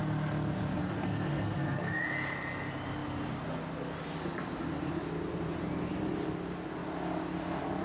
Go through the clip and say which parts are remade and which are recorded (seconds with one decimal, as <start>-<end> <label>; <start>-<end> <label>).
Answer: 0.0-0.8 recorded; 0.8-2.0 remade; 2.0-7.8 recorded